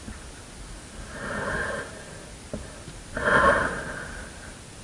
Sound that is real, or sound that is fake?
real